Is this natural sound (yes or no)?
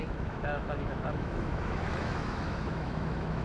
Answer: no